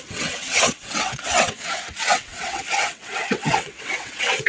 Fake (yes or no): yes